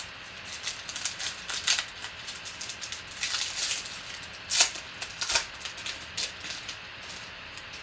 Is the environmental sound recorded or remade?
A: recorded